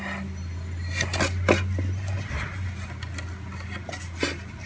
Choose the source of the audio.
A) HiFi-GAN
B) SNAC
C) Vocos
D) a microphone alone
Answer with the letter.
D